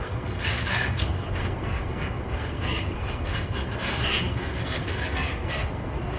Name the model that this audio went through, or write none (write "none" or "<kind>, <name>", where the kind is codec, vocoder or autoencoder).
codec, SNAC